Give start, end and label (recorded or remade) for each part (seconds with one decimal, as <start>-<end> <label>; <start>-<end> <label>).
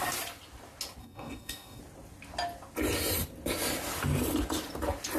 0.0-1.0 recorded; 1.0-1.8 remade; 1.8-5.2 recorded